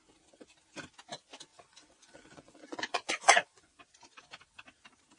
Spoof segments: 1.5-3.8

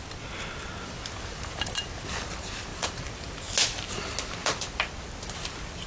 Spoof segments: none